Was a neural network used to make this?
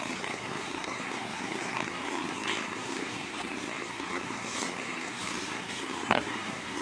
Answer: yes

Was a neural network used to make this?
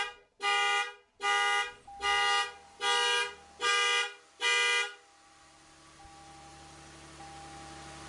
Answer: no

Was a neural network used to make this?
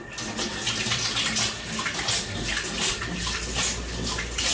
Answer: no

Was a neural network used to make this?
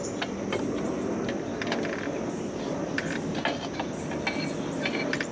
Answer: no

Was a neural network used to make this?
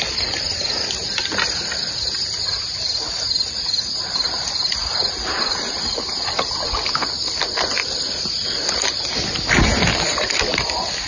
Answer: no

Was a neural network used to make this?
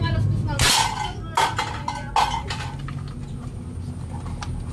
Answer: no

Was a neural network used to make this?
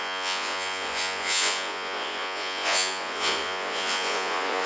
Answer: yes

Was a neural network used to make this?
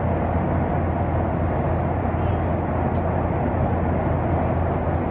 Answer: no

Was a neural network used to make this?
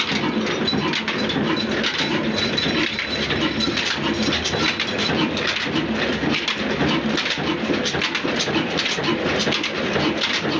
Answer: no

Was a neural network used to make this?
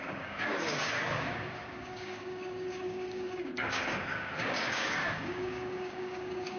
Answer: yes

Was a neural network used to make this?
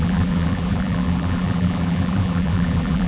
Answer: yes